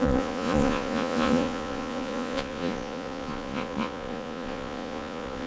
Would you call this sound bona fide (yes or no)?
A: no